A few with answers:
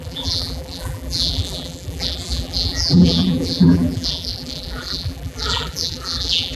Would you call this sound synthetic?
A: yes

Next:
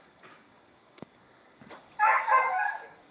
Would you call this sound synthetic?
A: yes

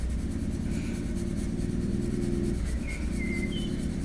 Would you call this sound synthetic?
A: no